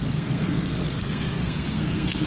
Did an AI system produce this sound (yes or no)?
yes